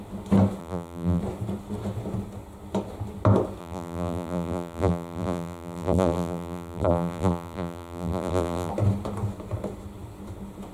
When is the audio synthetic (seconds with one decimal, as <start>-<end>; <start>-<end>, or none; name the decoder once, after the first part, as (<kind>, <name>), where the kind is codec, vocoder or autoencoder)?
0.6-1.2 (vocoder, BigVGAN v2); 3.6-8.7